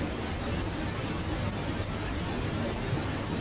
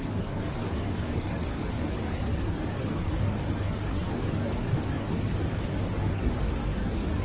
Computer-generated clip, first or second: second